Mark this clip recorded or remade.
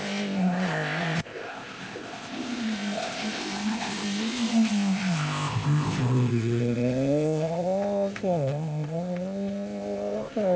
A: remade